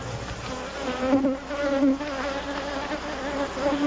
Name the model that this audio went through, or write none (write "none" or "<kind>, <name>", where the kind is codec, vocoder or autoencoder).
none